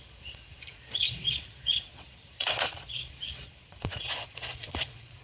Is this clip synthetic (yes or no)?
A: yes